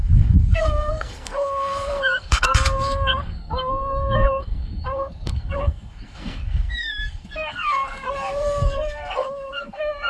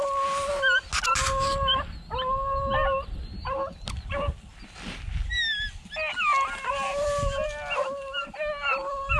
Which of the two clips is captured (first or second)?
second